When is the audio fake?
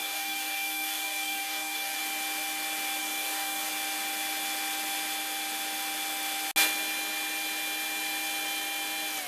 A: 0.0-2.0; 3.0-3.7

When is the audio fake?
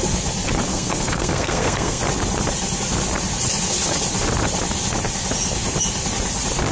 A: 0.7-2.0